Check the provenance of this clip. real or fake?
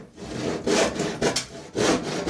real